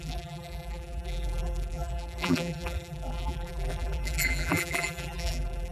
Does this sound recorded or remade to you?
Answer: remade